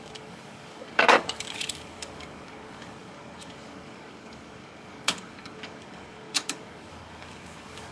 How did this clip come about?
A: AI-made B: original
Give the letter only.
A